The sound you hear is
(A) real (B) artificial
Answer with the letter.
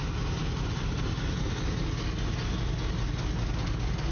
A